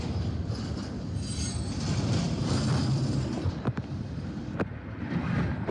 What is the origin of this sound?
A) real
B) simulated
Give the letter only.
B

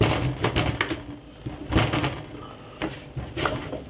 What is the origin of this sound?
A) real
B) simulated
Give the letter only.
A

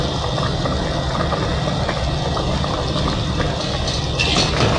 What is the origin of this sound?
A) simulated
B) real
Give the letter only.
B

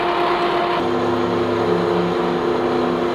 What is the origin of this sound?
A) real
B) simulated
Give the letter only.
A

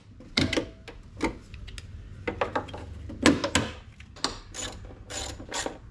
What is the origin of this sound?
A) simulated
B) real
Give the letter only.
B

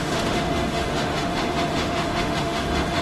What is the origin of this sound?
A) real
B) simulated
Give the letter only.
B